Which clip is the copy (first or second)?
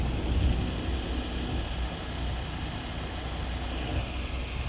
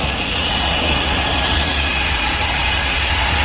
second